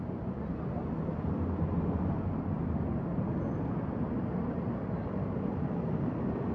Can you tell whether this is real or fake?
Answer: real